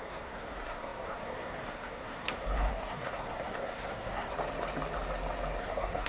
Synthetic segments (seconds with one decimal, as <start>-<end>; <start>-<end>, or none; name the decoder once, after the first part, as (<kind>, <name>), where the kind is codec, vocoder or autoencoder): 0.0-4.3 (codec, SNAC); 5.6-6.1